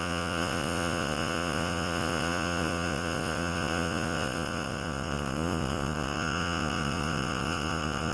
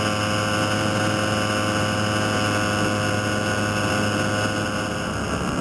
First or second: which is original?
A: second